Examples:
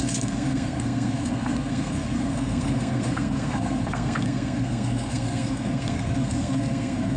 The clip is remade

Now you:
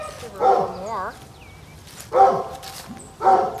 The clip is recorded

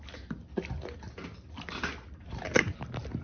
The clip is recorded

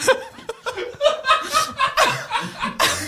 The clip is recorded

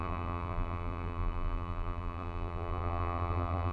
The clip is remade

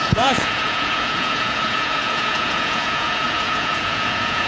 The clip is remade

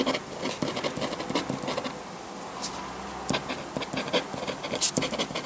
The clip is recorded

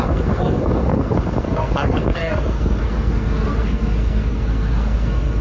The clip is remade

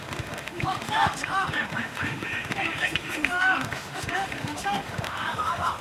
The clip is remade